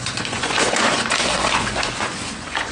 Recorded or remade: remade